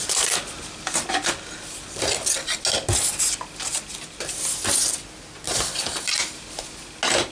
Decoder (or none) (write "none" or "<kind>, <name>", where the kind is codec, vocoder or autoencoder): none